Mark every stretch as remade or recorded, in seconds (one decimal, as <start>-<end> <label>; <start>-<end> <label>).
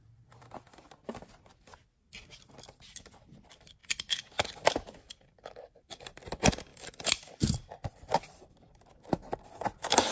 0.0-3.8 remade; 3.8-6.0 recorded; 6.0-10.1 remade